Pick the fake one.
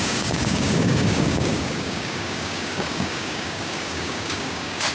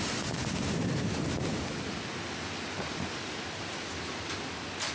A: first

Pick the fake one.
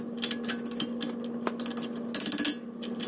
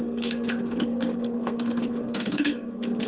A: second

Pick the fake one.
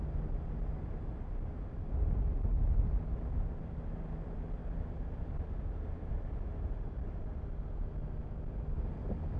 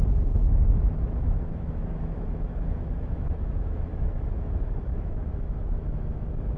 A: second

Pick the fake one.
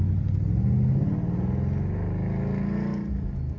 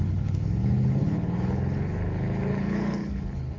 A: second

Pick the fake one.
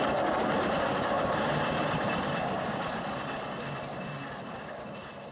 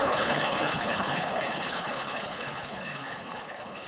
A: second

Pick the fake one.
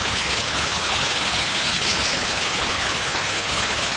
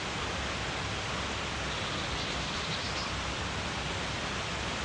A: first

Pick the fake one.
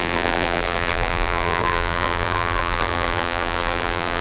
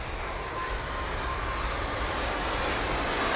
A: first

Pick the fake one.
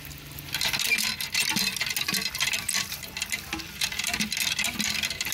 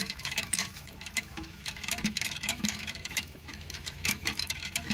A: second